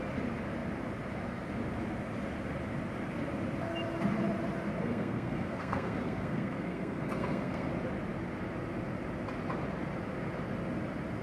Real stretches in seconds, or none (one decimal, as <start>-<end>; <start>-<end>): 0.0-4.8; 7.7-11.2